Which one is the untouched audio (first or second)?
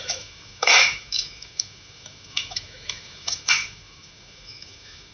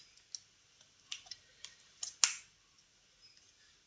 second